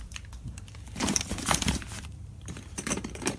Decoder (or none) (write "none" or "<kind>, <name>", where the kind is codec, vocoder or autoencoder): vocoder, BigVGAN v2